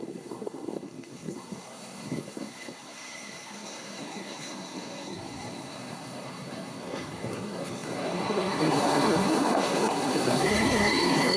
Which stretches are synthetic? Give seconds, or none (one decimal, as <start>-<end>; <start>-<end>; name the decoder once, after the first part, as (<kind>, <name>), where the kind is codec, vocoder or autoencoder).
0.0-11.4 (codec, SNAC)